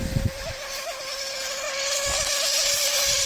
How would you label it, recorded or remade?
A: recorded